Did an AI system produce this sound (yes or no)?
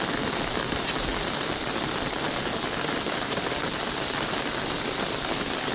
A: no